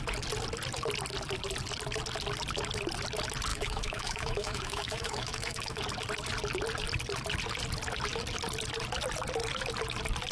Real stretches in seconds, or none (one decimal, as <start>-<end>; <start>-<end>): 0.0-3.5; 5.8-10.3